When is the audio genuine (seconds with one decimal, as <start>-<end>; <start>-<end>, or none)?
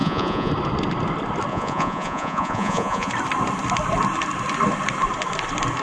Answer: 0.5-1.5; 3.1-5.8